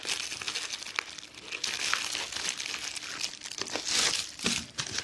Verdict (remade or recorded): recorded